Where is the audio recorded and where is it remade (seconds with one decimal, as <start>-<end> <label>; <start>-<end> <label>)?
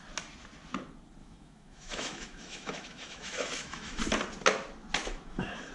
0.0-1.2 recorded; 1.2-4.0 remade; 4.0-5.0 recorded; 5.0-5.7 remade